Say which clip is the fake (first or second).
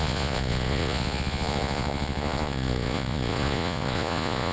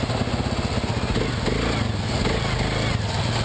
first